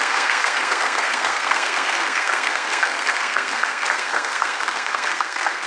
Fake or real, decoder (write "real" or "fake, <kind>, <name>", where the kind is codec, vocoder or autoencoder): fake, codec, SNAC